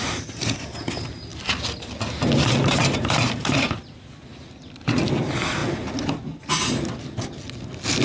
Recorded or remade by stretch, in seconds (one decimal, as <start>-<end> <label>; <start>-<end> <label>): 0.0-2.8 recorded; 2.8-4.0 remade; 4.0-8.0 recorded